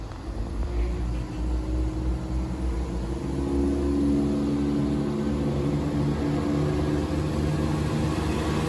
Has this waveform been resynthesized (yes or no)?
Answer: no